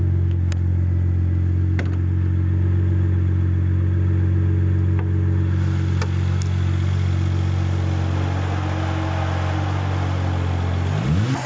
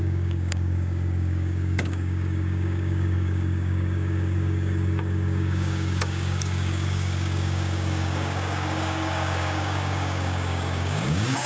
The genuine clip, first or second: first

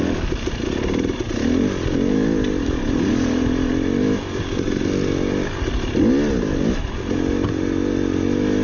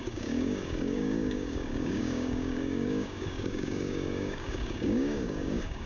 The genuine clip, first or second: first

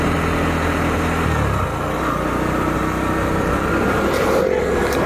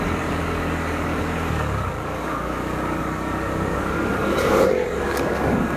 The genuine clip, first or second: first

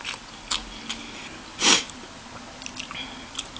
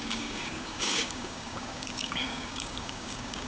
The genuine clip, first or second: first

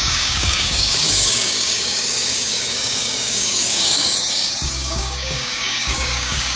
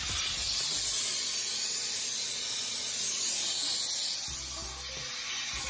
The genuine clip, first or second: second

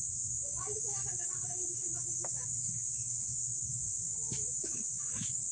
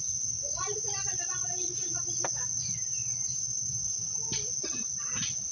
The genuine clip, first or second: second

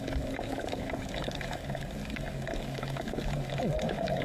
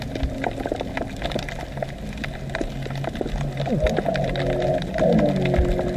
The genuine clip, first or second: second